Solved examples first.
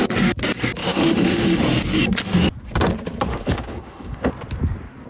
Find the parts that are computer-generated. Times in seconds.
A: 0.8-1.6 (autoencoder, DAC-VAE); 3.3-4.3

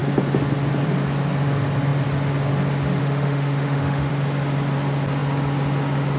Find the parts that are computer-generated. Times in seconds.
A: 3.0-4.1 (autoencoder, DAC-VAE)

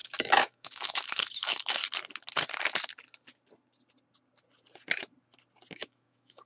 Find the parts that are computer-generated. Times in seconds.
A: 0.0-1.8 (autoencoder, DAC-VAE); 5.7-6.5

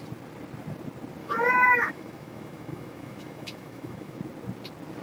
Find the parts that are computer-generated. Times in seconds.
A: 1.2-4.2 (autoencoder, DAC-VAE)